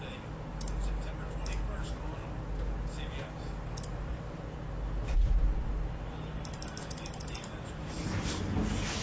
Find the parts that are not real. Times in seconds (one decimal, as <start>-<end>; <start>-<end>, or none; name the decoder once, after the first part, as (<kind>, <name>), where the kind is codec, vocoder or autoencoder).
none